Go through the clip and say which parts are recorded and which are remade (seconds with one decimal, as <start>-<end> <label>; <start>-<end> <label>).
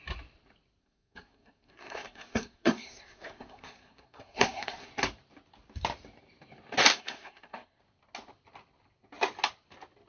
0.0-0.8 recorded; 0.8-4.9 remade; 4.9-6.9 recorded; 6.9-7.8 remade; 7.8-10.1 recorded